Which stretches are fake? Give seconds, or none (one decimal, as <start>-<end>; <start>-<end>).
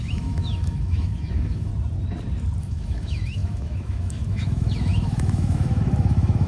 0.0-1.7; 2.6-6.5